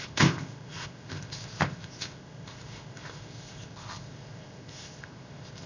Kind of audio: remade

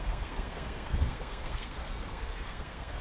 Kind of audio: remade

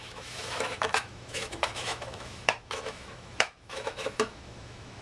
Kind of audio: remade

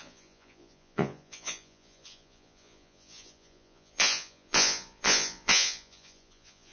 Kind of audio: remade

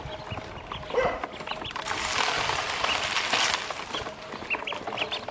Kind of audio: recorded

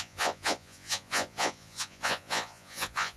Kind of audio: remade